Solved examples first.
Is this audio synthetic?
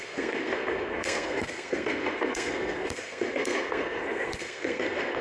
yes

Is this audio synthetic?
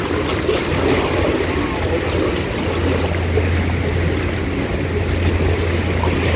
no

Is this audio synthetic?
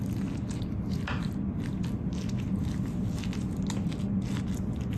no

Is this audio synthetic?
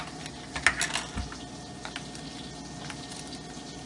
no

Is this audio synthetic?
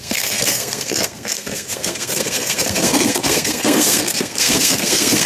yes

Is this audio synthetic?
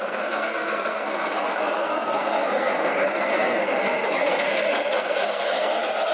yes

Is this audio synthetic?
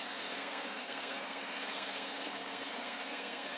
yes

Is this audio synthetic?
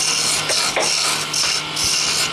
no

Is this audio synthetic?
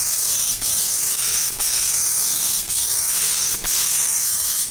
yes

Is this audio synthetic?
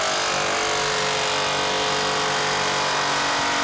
no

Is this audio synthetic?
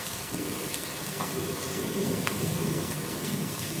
yes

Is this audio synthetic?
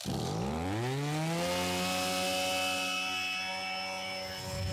no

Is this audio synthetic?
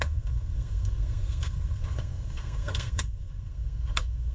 yes